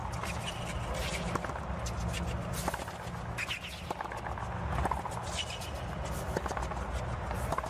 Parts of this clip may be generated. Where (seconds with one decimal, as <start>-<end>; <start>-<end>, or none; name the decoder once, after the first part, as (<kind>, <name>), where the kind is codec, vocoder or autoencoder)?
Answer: none